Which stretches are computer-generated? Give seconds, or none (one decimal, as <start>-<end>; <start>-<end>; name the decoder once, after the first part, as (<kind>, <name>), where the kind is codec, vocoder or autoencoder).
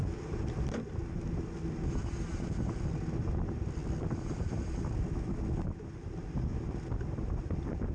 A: 0.0-1.0 (vocoder, BigVGAN v2); 3.2-6.5